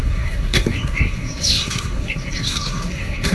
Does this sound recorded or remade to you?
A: remade